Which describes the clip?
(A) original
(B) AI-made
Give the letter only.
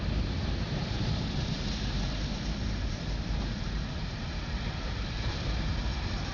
B